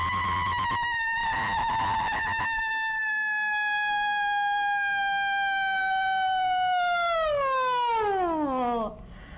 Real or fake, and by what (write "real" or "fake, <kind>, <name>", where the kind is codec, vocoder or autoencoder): real